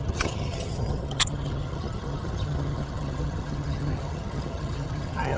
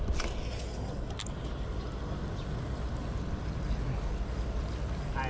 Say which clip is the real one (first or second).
second